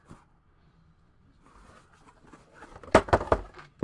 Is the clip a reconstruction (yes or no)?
no